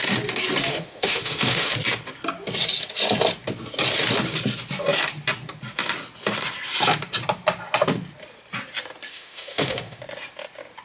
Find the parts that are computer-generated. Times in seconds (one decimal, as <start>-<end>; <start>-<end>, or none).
0.7-1.7; 9.1-10.0

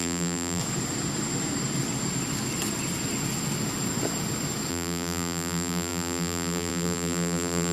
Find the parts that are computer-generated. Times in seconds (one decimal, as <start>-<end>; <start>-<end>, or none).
0.0-0.6; 4.7-7.7

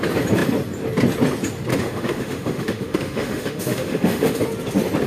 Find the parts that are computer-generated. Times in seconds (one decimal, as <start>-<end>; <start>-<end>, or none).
1.7-4.4

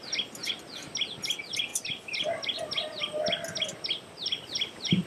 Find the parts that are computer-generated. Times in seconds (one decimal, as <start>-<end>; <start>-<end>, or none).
none

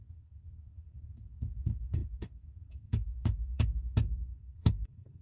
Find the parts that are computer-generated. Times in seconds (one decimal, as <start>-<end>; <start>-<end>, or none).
0.0-3.7; 4.3-5.2

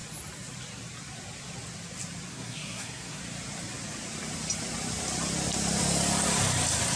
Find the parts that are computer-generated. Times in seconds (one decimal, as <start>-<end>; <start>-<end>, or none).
2.3-3.2

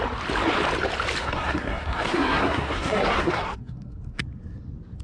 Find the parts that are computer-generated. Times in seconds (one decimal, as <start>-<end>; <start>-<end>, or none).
1.2-4.2

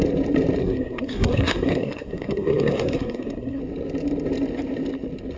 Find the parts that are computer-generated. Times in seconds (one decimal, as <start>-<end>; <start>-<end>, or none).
0.6-3.6